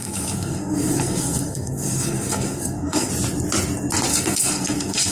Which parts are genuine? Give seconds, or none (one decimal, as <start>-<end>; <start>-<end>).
3.1-4.1